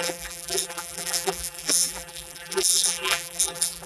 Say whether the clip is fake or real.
fake